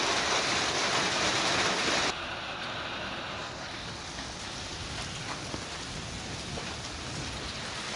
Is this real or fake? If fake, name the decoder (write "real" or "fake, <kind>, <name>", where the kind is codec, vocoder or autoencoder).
real